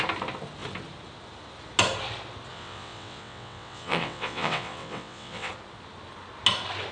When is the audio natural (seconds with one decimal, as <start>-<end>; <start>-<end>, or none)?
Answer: 0.0-2.5; 5.5-6.9